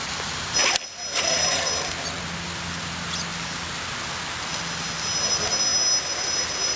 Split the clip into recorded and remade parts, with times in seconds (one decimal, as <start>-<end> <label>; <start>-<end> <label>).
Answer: 0.0-6.8 recorded